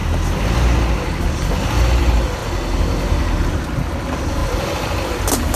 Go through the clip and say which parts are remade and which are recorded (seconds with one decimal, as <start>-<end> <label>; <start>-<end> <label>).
0.0-5.6 recorded